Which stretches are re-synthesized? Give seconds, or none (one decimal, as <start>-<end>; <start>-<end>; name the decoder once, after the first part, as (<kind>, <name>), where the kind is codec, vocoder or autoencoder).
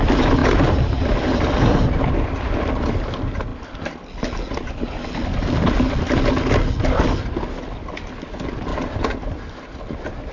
none